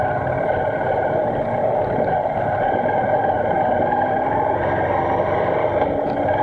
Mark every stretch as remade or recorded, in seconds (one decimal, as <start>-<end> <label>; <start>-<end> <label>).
0.0-6.4 recorded